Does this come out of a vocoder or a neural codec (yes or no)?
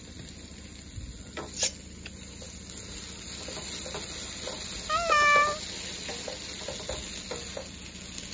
no